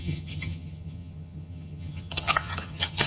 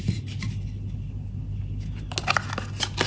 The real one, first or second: second